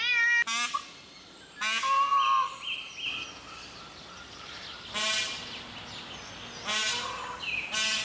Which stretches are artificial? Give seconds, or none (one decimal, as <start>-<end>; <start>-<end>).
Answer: none